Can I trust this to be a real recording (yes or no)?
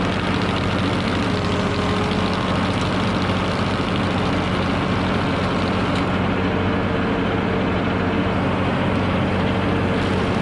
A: yes